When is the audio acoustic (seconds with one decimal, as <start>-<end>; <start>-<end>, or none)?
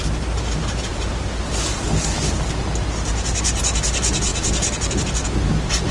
0.0-5.9